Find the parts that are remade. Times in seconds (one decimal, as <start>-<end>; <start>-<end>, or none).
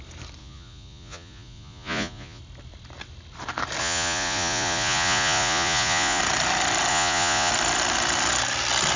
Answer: 0.4-2.4; 3.8-6.2; 6.9-7.5